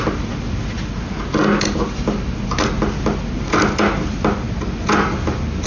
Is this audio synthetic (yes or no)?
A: no